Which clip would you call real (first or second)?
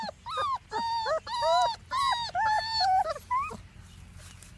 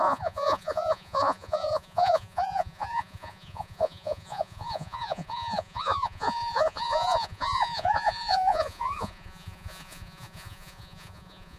first